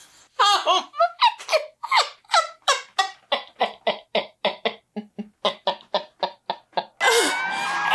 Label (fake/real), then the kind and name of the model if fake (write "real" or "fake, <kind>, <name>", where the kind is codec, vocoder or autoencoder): real